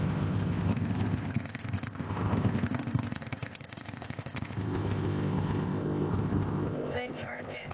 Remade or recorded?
remade